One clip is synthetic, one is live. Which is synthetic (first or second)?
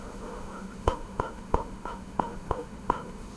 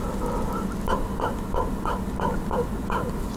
first